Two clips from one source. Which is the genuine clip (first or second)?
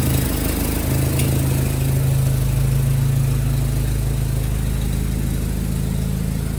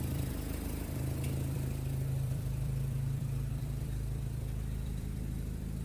first